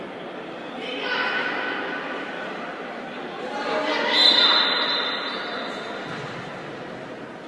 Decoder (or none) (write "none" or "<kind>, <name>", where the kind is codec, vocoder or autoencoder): none